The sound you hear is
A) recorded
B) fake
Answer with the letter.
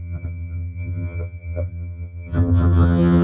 B